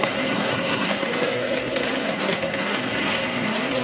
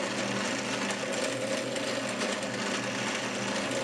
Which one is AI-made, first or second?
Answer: first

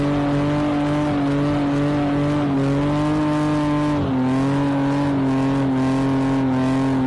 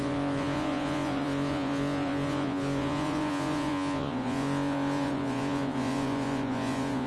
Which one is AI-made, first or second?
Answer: second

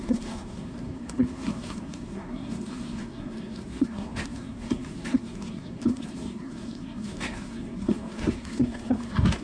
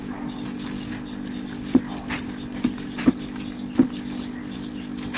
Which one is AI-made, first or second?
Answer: first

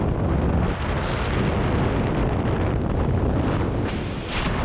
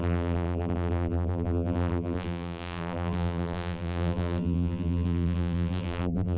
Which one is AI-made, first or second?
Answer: second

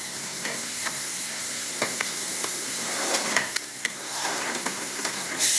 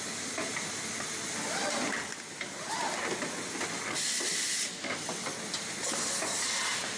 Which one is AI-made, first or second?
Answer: first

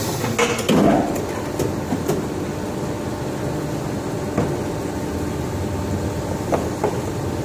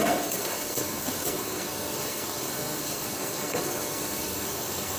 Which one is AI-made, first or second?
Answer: second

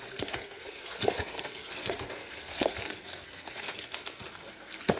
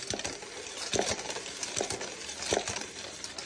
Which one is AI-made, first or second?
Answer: first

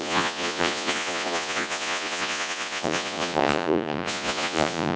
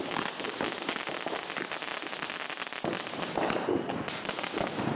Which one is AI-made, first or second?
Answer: first